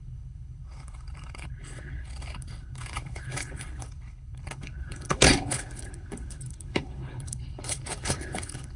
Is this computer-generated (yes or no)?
yes